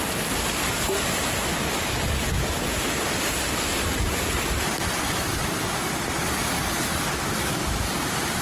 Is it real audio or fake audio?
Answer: real